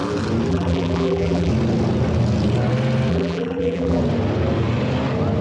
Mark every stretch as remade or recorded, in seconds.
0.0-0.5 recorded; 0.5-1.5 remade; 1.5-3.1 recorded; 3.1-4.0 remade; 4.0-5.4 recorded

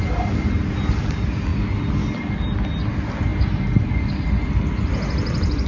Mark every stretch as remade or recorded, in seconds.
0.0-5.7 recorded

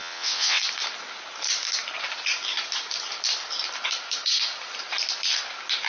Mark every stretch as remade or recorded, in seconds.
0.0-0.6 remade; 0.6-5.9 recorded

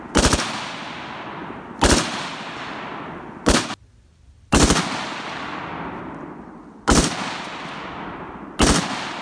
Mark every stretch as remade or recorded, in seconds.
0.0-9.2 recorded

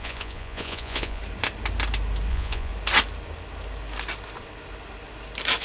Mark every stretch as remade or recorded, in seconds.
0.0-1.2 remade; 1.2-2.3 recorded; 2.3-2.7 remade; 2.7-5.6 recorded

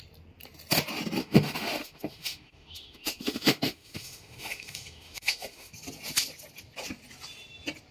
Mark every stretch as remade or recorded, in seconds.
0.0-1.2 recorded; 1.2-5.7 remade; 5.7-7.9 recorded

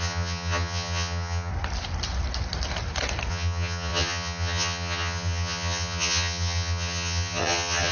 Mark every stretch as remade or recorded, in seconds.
0.0-1.5 remade; 1.5-3.3 recorded; 3.3-7.9 remade

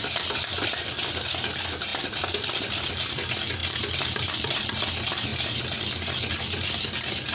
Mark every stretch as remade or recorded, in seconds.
0.0-1.9 recorded; 1.9-2.9 remade; 2.9-3.6 recorded; 3.6-4.6 remade; 4.6-7.3 recorded